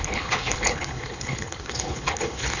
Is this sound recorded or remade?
remade